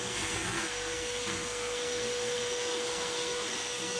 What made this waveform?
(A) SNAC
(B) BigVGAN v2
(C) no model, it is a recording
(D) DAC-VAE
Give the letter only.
A